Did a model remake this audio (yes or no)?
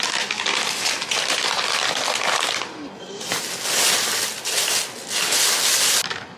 no